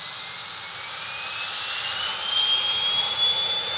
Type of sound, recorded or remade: recorded